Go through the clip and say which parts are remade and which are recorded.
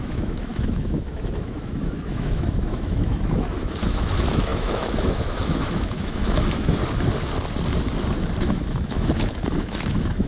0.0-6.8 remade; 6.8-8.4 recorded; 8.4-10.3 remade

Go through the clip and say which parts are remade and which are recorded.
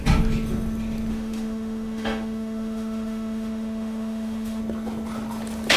0.0-1.1 recorded; 1.1-4.6 remade; 4.6-5.8 recorded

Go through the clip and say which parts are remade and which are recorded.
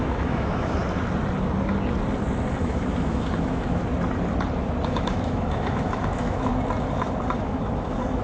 0.0-0.8 remade; 0.8-2.6 recorded; 2.6-3.8 remade; 3.8-4.9 recorded; 4.9-6.5 remade; 6.5-7.4 recorded; 7.4-8.2 remade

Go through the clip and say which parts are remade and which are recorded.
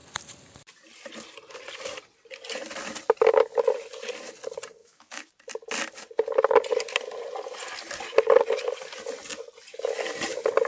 0.0-4.8 recorded; 4.8-5.3 remade; 5.3-10.7 recorded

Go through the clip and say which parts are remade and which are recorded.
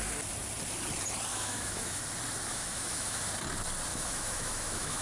0.0-1.3 recorded; 1.3-2.0 remade; 2.0-2.5 recorded; 2.5-3.2 remade; 3.2-3.9 recorded; 3.9-5.0 remade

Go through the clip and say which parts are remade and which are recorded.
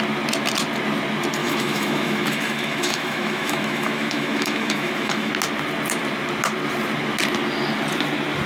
0.0-1.4 recorded; 1.4-5.3 remade; 5.3-8.5 recorded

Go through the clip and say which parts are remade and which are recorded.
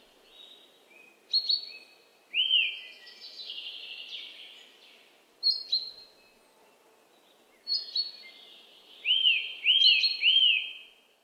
0.0-11.2 recorded